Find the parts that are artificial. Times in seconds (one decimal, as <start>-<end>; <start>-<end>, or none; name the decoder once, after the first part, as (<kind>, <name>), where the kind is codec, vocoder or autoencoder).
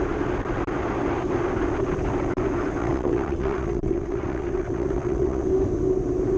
2.8-5.5 (vocoder, WaveNeXt)